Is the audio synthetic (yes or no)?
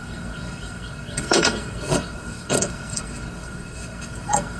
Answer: yes